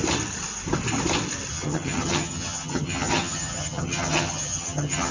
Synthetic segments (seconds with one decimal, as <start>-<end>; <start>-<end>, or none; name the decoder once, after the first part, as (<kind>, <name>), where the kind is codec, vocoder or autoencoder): 1.5-5.1 (vocoder, HiFi-GAN)